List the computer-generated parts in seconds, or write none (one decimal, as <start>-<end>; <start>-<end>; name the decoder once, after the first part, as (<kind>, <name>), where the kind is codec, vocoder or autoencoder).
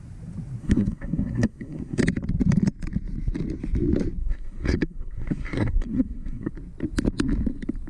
0.6-2.0 (codec, SNAC); 4.2-6.5